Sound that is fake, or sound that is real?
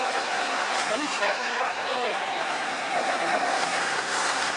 fake